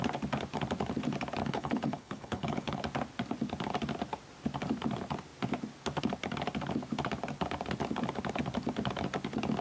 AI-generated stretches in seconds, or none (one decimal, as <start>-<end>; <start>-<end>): 1.4-2.8